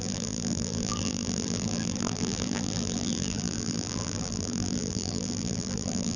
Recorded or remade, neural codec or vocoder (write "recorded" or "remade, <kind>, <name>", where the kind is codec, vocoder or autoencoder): remade, vocoder, BigVGAN v2